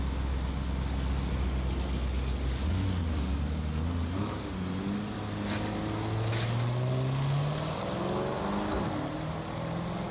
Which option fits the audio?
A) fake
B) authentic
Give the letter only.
B